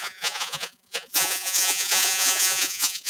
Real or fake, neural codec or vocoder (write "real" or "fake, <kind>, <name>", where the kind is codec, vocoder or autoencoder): fake, vocoder, Vocos